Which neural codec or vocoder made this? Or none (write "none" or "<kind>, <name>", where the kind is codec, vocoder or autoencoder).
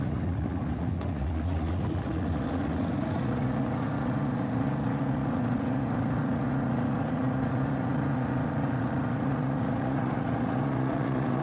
vocoder, Vocos